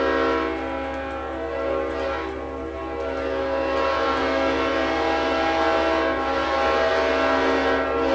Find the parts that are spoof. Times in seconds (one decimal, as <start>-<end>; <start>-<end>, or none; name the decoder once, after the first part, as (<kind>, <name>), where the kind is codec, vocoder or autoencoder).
none